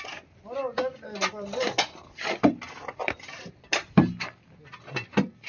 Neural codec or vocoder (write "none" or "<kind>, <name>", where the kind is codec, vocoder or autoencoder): none